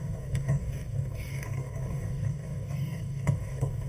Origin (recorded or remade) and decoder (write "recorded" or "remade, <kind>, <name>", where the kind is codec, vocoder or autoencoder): remade, codec, DAC